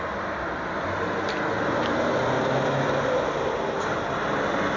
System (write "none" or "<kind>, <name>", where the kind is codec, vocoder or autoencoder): none